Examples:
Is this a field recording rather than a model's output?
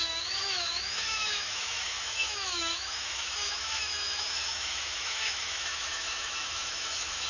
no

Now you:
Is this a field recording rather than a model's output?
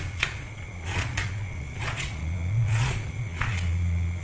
no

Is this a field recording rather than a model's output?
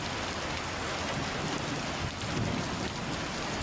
yes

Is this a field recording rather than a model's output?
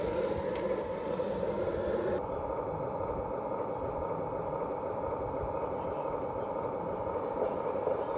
yes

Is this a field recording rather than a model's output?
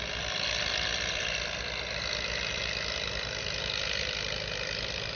yes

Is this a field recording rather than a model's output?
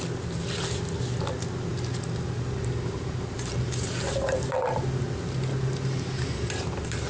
yes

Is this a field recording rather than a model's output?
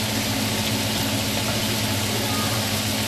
yes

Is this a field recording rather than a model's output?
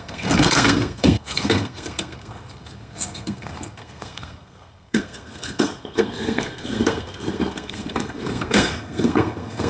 no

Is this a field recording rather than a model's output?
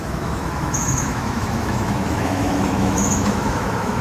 no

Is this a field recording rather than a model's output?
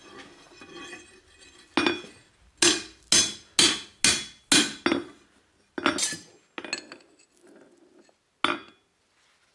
yes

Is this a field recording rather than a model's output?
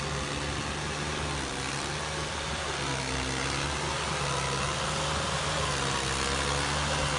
yes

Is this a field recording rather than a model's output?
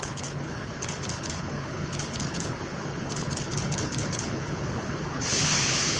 no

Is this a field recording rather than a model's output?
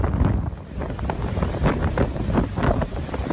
yes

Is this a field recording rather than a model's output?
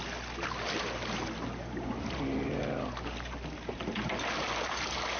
yes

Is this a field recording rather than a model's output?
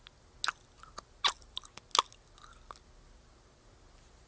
yes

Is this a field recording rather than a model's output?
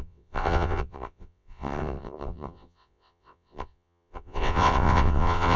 no